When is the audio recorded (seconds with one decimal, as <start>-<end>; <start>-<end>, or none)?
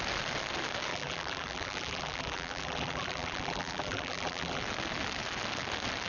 0.0-0.9; 4.6-6.1